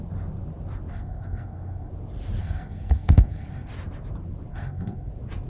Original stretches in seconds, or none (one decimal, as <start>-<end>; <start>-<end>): 0.0-0.9; 1.9-2.4; 3.7-4.5; 5.1-5.5